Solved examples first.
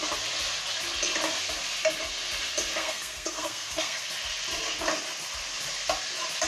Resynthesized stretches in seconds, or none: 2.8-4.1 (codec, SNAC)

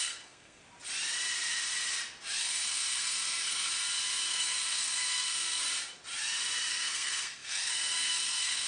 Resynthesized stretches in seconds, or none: 0.0-0.6 (codec, SNAC); 2.4-3.7; 4.3-5.6; 6.7-8.7

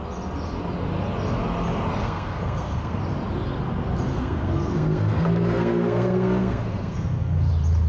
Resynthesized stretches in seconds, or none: 2.0-3.0 (codec, SNAC); 4.1-7.5

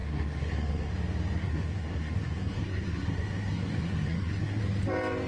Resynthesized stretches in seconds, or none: 0.0-0.9 (codec, SNAC); 1.4-4.6